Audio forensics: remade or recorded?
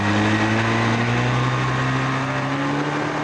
recorded